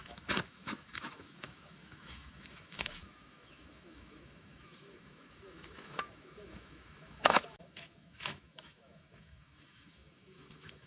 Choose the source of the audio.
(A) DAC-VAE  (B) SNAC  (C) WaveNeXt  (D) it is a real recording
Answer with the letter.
A